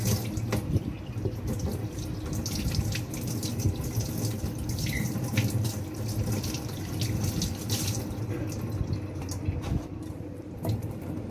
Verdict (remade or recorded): recorded